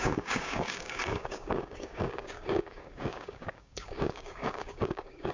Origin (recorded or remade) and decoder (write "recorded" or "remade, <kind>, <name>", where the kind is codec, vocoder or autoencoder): remade, codec, DAC